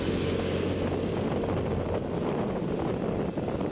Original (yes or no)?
yes